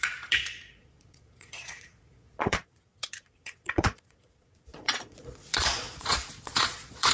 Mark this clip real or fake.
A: fake